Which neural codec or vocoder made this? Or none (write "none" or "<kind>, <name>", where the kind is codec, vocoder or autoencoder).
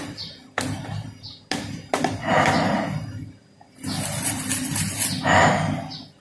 none